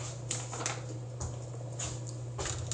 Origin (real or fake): real